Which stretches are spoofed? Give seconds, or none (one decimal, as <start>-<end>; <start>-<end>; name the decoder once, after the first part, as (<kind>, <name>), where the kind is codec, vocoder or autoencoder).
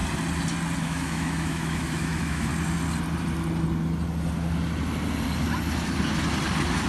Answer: 0.8-2.5 (autoencoder, DAC-VAE)